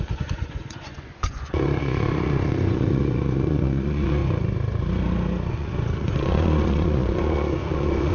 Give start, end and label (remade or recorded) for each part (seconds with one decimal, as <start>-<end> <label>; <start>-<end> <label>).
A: 0.0-4.2 remade; 4.2-5.5 recorded; 5.5-8.1 remade